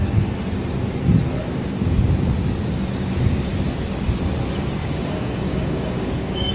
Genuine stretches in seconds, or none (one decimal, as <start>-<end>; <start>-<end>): 0.0-4.8